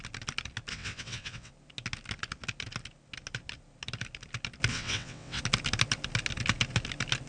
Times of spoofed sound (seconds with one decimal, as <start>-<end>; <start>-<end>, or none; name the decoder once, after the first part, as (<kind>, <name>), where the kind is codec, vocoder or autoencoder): 0.7-1.5 (vocoder, WaveNeXt); 4.7-5.4